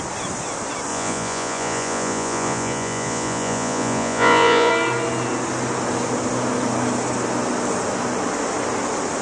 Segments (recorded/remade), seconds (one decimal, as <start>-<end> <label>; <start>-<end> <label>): 0.0-0.9 recorded; 0.9-4.7 remade; 4.7-9.2 recorded